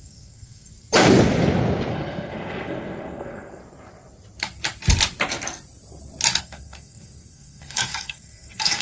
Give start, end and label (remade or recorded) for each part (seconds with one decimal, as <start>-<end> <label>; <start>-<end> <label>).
0.0-0.7 remade; 0.7-1.9 recorded; 1.9-3.6 remade; 3.6-6.4 recorded; 6.4-8.8 remade